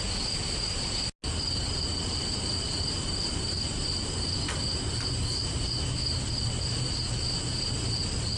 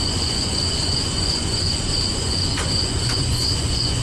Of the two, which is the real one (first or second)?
first